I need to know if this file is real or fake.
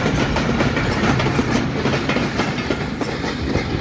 real